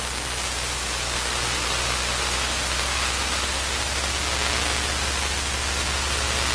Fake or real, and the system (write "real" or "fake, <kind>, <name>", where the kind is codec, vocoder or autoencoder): real